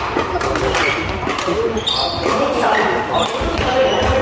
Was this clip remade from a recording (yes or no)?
no